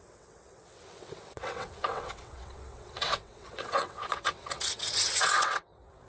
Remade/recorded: remade